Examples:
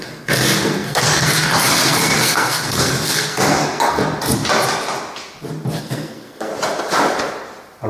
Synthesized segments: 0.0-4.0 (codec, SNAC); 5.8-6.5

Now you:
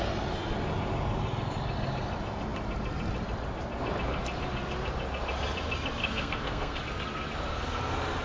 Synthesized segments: 6.0-6.8 (codec, SNAC)

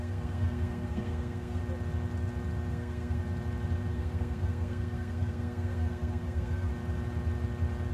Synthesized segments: 0.0-1.6 (codec, SNAC); 2.7-3.2; 3.9-6.7

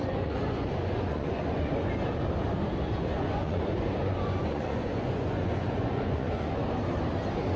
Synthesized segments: 0.0-1.9 (vocoder, Vocos); 3.1-6.5